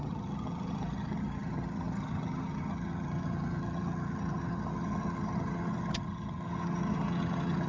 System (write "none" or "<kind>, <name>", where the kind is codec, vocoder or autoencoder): vocoder, HiFi-GAN